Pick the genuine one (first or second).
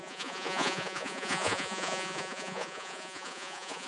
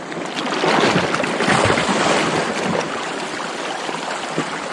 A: second